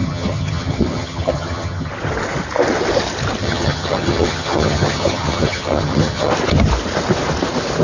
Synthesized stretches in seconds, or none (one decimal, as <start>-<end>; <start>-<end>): 0.0-1.9; 3.4-6.3